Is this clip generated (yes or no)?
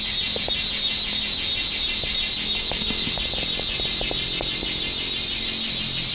no